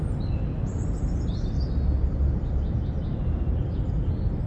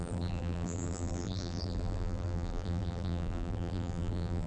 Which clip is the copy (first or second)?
second